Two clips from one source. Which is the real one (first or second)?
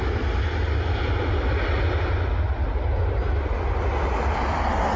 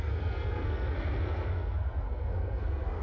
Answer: first